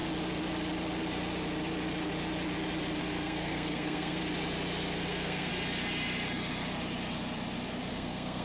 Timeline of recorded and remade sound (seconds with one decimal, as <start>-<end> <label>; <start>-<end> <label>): 0.0-3.0 recorded; 3.0-4.2 remade; 4.2-5.1 recorded; 5.1-5.5 remade; 5.5-7.9 recorded; 7.9-8.4 remade